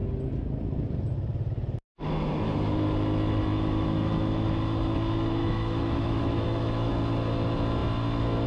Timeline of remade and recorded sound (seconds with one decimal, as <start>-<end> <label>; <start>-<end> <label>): 0.0-3.5 recorded; 3.5-4.1 remade; 4.1-5.4 recorded; 5.4-6.9 remade; 6.9-8.5 recorded